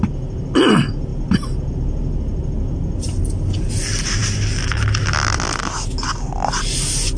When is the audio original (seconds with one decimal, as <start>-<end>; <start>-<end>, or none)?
0.0-7.2